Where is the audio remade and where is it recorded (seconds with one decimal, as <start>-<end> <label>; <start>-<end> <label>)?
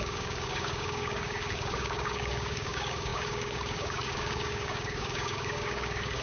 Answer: 0.0-6.2 remade